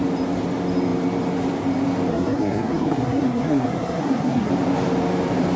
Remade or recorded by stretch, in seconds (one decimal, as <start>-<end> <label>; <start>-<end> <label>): 0.0-2.1 recorded; 2.1-4.5 remade; 4.5-5.6 recorded